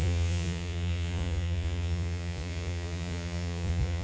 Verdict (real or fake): fake